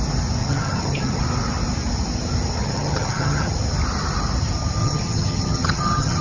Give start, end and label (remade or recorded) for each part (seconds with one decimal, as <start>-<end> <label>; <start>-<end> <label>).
0.0-0.4 recorded; 0.4-1.2 remade; 1.2-2.6 recorded; 2.6-3.5 remade; 3.5-4.8 recorded; 4.8-6.2 remade